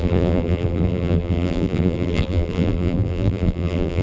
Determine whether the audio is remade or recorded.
remade